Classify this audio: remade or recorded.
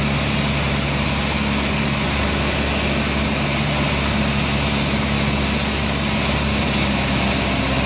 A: recorded